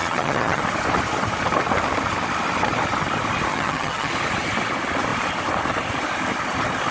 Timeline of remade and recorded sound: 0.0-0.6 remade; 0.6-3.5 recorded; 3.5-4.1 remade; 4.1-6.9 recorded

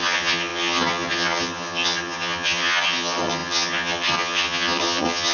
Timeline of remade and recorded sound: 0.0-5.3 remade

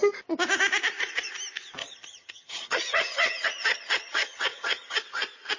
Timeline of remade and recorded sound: 0.0-1.8 recorded; 1.8-5.0 remade; 5.0-5.6 recorded

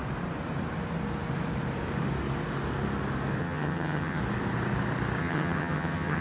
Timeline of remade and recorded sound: 0.0-3.4 recorded; 3.4-4.2 remade; 4.2-5.2 recorded; 5.2-6.2 remade

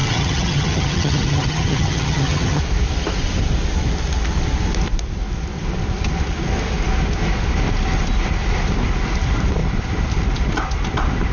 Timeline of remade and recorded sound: 0.0-2.6 remade; 2.6-11.3 recorded

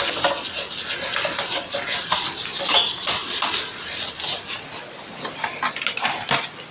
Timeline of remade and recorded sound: 0.0-6.7 recorded

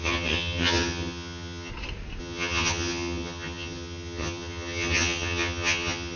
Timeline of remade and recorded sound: 0.0-1.7 remade; 1.7-2.2 recorded; 2.2-6.2 remade

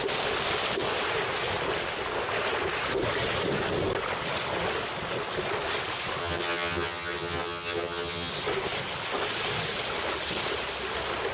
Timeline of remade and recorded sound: 0.0-6.2 recorded; 6.2-8.3 remade; 8.3-11.3 recorded